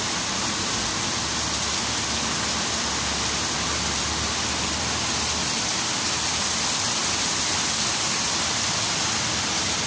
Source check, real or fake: real